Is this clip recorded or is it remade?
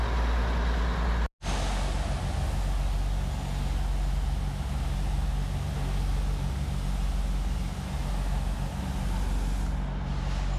recorded